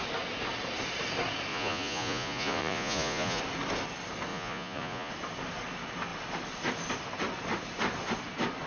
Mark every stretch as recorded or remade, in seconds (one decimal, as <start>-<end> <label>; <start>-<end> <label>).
0.0-1.5 recorded; 1.5-3.4 remade; 3.4-4.3 recorded; 4.3-5.1 remade; 5.1-8.7 recorded